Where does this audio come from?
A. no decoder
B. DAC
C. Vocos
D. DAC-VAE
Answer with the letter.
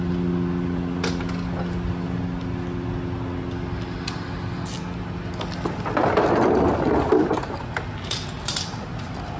A